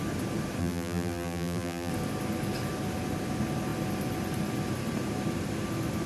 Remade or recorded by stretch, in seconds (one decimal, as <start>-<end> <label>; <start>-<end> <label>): 0.0-0.6 recorded; 0.6-1.9 remade; 1.9-6.1 recorded